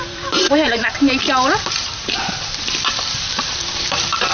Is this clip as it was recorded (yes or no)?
no